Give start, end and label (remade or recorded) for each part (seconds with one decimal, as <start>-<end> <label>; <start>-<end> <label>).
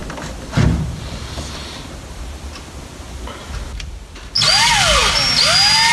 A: 0.0-5.9 recorded